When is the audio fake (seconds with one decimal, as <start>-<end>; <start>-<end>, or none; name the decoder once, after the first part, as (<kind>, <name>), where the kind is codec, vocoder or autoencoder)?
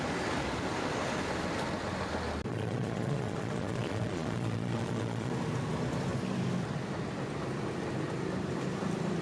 2.5-5.3 (vocoder, Vocos)